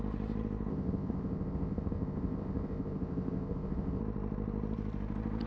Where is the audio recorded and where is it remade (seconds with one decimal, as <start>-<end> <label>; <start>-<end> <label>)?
0.0-0.7 recorded; 0.7-4.0 remade; 4.0-5.5 recorded